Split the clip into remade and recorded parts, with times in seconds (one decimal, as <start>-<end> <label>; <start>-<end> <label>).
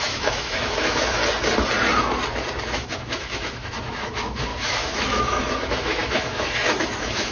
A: 0.0-1.2 remade; 1.2-2.6 recorded; 2.6-7.3 remade